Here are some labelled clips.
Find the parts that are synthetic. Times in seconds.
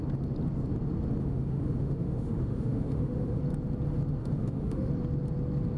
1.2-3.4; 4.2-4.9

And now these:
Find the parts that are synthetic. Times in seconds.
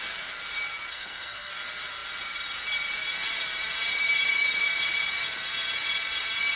0.9-1.5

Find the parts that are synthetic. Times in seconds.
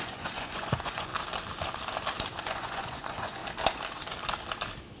0.0-1.1; 2.4-3.4